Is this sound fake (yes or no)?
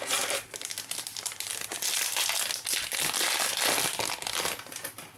no